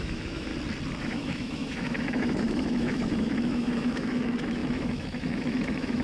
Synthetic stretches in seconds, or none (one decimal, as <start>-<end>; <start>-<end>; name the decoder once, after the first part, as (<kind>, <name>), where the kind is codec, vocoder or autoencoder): 0.0-0.5 (autoencoder, DAC-VAE); 1.0-6.0